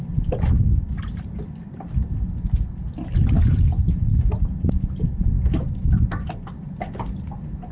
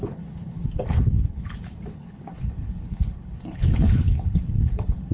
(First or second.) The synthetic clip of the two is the second